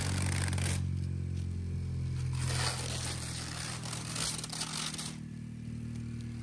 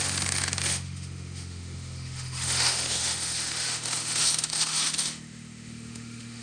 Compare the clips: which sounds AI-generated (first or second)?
second